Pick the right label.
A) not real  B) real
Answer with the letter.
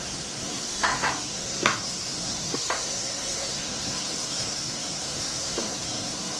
A